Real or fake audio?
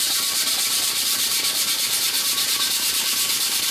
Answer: fake